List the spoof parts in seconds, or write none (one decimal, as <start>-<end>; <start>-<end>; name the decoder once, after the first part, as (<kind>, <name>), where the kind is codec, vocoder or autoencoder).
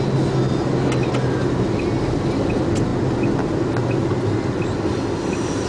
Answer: none